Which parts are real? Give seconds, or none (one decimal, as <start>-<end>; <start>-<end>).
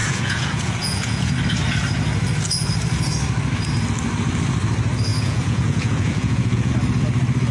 1.3-5.1; 6.7-7.5